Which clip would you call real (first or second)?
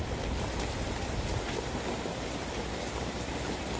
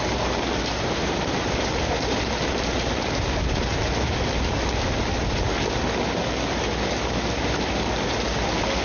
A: second